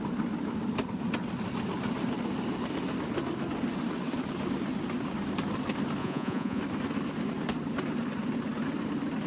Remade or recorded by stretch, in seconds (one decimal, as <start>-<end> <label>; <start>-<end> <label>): 0.0-6.0 recorded; 6.0-6.6 remade; 6.6-9.3 recorded